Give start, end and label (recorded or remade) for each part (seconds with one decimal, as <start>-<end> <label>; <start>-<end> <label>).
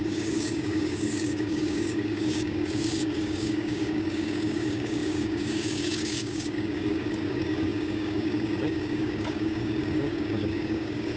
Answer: 0.0-11.2 remade